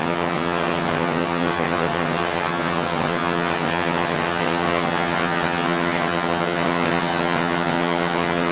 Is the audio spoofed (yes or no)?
yes